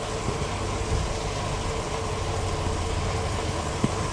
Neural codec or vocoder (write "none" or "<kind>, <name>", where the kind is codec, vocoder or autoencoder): none